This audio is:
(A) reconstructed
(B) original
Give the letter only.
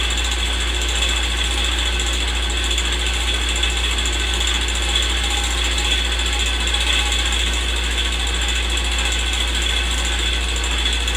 B